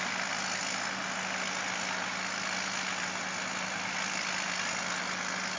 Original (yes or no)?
yes